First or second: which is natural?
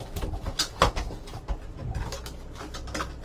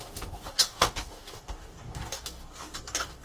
first